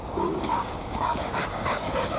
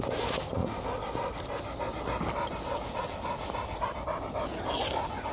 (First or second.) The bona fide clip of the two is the second